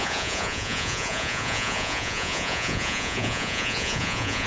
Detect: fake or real fake